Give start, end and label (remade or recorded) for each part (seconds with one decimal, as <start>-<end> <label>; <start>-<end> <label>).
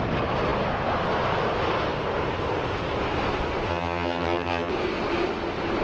0.0-3.7 recorded; 3.7-4.7 remade; 4.7-5.8 recorded